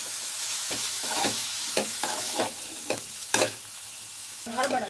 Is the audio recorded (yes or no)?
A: no